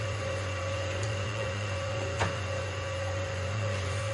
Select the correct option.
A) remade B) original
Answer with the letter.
A